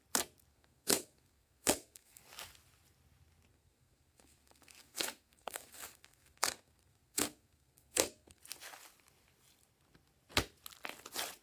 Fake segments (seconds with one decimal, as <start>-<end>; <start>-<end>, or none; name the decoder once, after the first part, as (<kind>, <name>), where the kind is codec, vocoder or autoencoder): 0.5-2.2 (codec, SNAC); 3.5-8.4